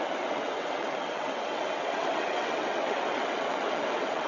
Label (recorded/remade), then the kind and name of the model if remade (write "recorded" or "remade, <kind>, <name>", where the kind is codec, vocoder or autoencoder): remade, vocoder, WaveNeXt